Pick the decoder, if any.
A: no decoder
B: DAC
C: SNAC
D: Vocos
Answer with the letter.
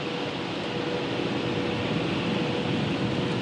A